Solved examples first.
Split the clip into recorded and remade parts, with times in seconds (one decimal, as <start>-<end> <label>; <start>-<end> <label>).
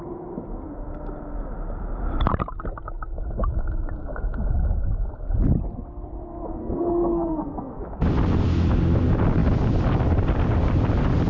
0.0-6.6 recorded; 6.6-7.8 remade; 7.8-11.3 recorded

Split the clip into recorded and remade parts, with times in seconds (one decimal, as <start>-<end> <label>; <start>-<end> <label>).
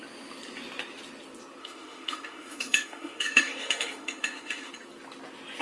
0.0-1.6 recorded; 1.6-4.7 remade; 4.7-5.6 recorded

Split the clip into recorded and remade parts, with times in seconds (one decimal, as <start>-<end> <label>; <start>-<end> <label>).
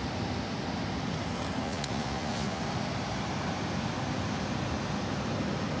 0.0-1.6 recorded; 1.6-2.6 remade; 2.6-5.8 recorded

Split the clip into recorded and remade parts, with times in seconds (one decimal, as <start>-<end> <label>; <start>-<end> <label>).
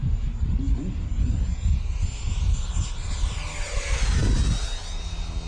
0.0-5.5 recorded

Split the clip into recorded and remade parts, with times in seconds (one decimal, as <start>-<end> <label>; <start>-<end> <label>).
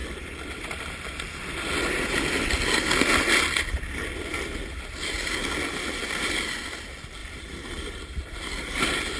0.0-7.2 recorded; 7.2-8.0 remade; 8.0-9.2 recorded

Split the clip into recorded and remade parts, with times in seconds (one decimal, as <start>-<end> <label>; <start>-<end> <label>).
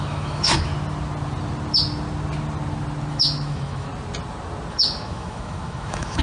0.0-0.7 remade; 0.7-3.1 recorded; 3.1-3.9 remade; 3.9-4.7 recorded; 4.7-6.2 remade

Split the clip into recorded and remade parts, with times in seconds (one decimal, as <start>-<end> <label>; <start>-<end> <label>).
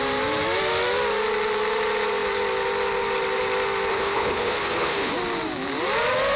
0.0-3.9 recorded; 3.9-5.1 remade; 5.1-6.4 recorded